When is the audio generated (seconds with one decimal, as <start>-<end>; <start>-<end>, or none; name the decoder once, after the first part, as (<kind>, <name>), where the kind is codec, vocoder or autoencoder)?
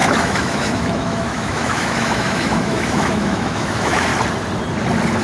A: 0.0-4.1 (autoencoder, DAC-VAE)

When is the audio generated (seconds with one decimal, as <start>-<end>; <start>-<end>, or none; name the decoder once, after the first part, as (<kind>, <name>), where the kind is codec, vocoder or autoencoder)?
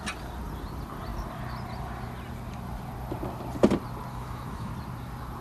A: 4.1-4.7 (autoencoder, DAC-VAE)